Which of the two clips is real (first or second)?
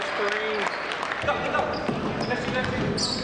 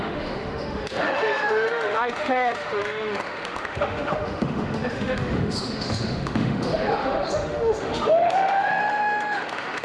first